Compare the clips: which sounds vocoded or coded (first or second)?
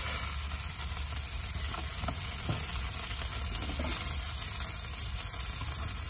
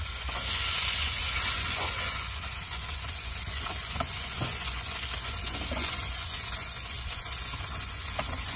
second